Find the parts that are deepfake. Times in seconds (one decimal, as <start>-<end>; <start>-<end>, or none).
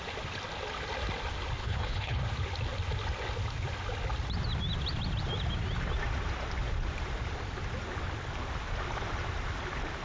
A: 1.6-2.2